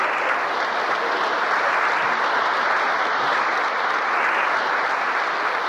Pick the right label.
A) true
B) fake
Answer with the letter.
A